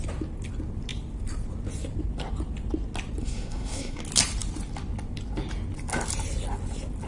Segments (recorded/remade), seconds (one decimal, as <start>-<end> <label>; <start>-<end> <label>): 0.0-3.2 recorded; 3.2-4.0 remade; 4.0-7.1 recorded